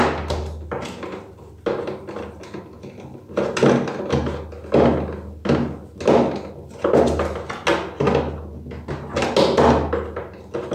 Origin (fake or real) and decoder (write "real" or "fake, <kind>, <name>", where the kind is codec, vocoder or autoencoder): real